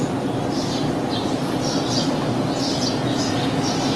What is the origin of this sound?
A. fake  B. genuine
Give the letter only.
B